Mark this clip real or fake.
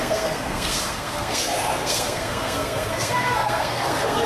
fake